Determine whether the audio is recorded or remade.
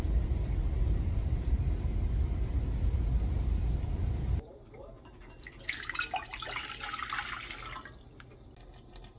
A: recorded